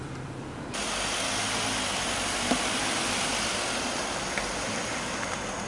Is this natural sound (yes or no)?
yes